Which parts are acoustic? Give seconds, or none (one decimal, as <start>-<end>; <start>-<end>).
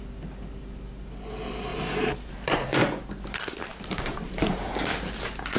0.0-1.7; 2.8-3.7; 4.7-5.6